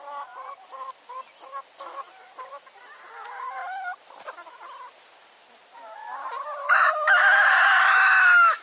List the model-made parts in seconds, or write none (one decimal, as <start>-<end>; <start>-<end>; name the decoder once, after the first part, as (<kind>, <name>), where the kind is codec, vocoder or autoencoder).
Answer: 6.6-8.6 (autoencoder, DAC-VAE)